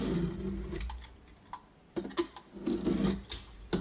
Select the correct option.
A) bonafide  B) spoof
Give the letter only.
A